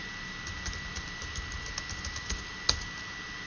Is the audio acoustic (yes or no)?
yes